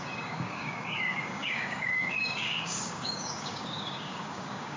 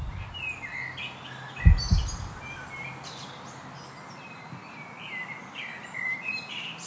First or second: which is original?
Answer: second